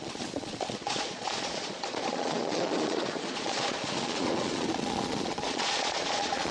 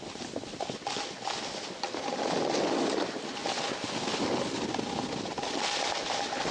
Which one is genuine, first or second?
second